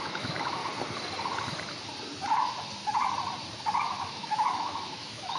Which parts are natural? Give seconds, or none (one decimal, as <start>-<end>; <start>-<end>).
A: 0.6-3.8